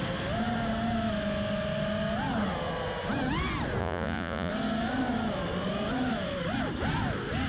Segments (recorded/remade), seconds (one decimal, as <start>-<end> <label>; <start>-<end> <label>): 0.0-3.8 recorded; 3.8-4.5 remade; 4.5-7.5 recorded